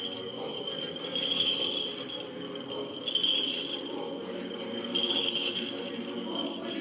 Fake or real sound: real